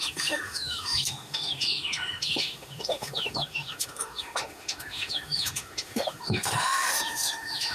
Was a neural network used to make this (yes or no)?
yes